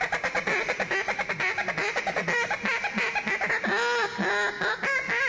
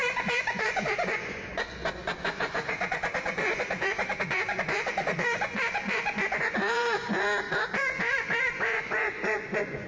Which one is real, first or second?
first